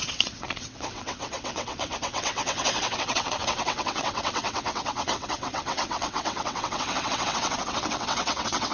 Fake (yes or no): yes